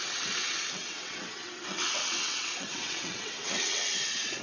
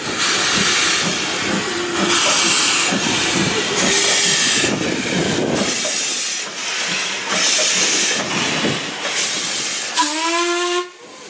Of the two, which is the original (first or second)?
second